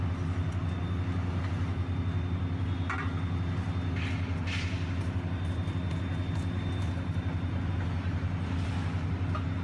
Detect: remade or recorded recorded